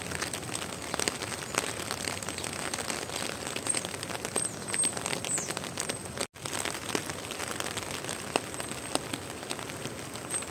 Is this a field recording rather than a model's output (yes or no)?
yes